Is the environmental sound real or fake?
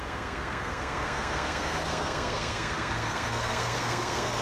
fake